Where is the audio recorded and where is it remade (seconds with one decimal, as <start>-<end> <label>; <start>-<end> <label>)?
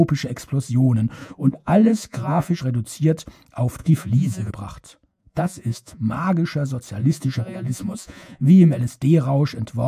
0.0-1.2 recorded; 1.2-2.6 remade; 2.6-3.8 recorded; 3.8-4.5 remade; 4.5-5.1 recorded; 5.1-6.0 remade; 6.0-7.0 recorded; 7.0-8.8 remade; 8.8-9.9 recorded